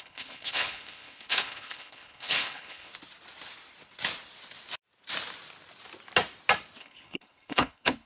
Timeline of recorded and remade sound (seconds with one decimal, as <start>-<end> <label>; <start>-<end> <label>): 0.0-2.9 remade; 2.9-6.8 recorded; 6.8-8.1 remade